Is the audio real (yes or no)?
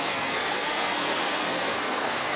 no